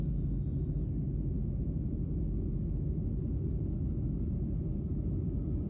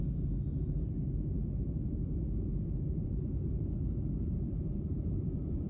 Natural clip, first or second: first